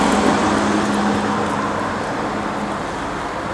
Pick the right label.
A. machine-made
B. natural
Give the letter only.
B